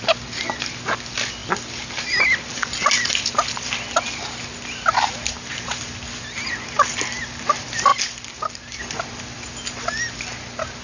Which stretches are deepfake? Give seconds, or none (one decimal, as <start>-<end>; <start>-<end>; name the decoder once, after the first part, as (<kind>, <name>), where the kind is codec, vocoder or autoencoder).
none